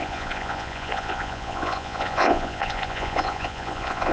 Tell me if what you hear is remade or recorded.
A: remade